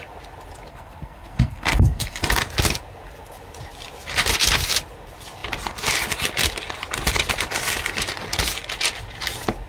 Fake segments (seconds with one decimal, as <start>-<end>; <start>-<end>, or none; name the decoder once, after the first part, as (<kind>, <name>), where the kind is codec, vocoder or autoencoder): 0.7-2.2 (codec, SNAC)